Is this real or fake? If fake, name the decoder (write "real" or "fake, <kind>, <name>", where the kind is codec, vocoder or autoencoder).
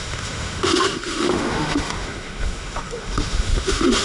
fake, autoencoder, DAC-VAE